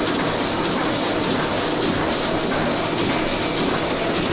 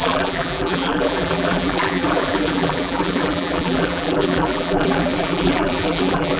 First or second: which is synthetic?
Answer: second